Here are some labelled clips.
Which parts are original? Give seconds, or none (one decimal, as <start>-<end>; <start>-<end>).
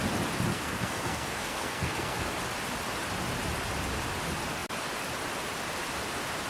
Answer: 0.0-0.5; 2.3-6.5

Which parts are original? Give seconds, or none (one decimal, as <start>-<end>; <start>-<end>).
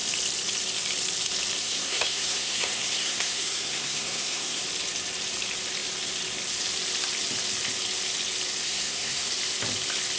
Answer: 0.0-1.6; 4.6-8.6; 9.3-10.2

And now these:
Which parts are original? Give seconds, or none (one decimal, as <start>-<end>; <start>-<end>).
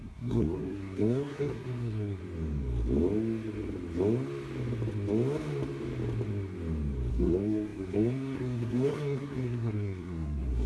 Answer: 2.2-7.1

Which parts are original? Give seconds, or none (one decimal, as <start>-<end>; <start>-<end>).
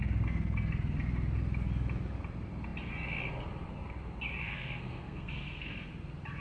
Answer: 0.0-4.4; 5.9-6.4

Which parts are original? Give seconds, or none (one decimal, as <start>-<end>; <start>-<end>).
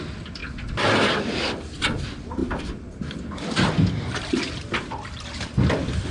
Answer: 0.0-6.1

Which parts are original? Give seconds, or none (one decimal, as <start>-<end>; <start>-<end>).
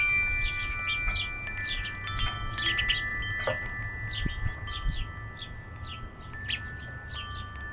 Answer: 0.0-7.7